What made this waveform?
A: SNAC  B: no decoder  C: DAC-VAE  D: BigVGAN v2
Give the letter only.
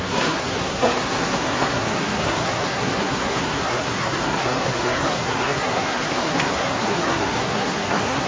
A